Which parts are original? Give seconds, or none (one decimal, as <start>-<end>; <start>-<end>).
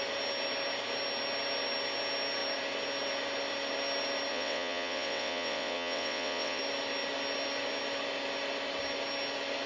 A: 0.0-4.3; 6.6-9.7